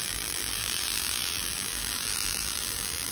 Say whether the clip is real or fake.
fake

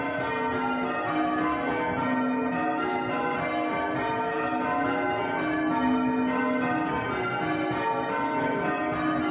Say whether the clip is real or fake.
real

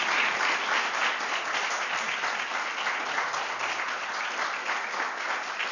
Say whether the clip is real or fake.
real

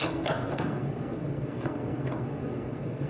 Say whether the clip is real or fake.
fake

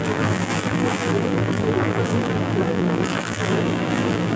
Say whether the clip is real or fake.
fake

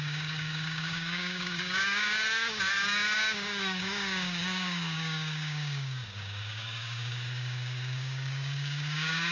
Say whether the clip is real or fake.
fake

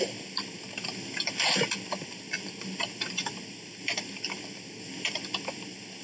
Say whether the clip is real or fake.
real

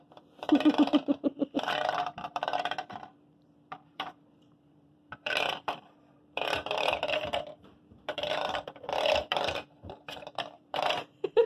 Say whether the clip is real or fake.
fake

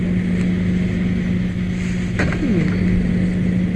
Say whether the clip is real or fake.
real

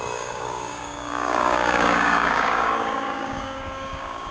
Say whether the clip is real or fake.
fake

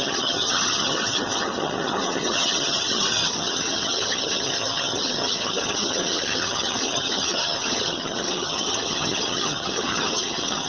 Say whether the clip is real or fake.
fake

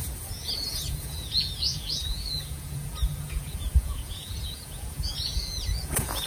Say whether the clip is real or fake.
fake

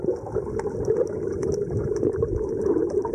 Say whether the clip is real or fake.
real